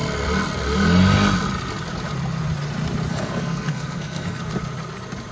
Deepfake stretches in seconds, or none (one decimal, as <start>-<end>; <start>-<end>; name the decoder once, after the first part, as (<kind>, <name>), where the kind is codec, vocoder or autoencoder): 3.1-4.4 (codec, SNAC)